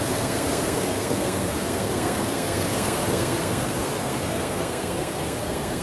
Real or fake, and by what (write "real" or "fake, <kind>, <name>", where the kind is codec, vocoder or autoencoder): fake, codec, SNAC